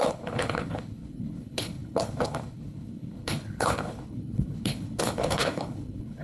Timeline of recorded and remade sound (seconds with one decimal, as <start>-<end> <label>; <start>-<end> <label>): 0.0-6.2 remade